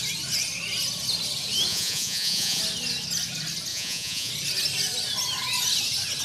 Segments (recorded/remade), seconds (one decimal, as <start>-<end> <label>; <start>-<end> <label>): 0.0-1.7 recorded; 1.7-2.6 remade; 2.6-3.7 recorded; 3.7-4.3 remade; 4.3-6.2 recorded